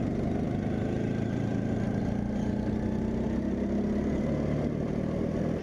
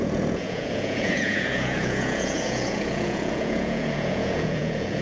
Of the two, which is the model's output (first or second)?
second